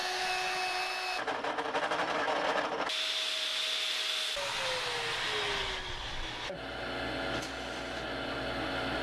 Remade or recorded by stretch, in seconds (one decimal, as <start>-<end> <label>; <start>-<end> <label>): 0.0-9.0 recorded